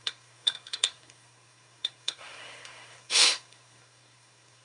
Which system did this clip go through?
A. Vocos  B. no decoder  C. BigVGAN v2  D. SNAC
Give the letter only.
D